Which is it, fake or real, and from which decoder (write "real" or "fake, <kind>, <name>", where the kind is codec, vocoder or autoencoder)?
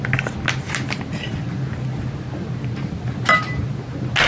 real